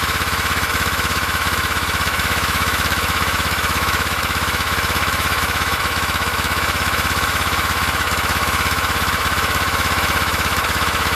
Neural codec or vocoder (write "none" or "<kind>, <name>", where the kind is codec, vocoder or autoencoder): autoencoder, DAC-VAE